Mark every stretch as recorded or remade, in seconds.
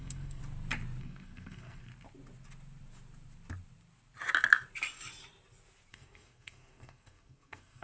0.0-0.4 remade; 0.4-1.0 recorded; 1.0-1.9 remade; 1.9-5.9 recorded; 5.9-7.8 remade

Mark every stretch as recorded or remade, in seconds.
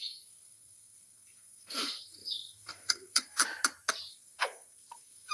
0.0-3.4 remade; 3.4-4.1 recorded; 4.1-5.3 remade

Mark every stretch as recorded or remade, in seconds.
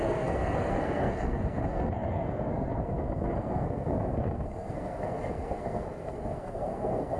0.0-7.2 remade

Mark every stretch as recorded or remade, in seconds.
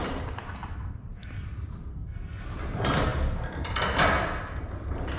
0.0-1.9 recorded; 1.9-2.4 remade; 2.4-5.2 recorded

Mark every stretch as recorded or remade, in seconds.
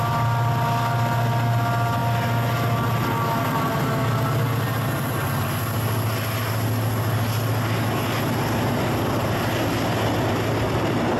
0.0-11.2 recorded